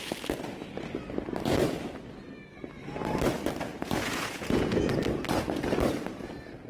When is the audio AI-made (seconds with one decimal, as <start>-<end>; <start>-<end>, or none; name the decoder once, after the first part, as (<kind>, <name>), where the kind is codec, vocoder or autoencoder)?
3.7-4.8 (vocoder, Vocos)